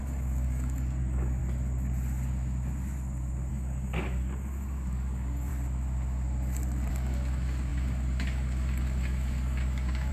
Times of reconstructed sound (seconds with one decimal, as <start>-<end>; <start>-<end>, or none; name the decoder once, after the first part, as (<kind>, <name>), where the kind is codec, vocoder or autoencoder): 0.0-1.4 (codec, DAC); 3.5-5.5; 6.9-10.1